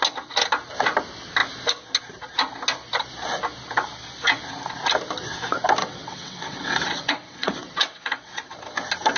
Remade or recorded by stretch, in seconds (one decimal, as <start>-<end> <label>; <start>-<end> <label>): 0.0-5.8 recorded; 5.8-8.5 remade; 8.5-9.2 recorded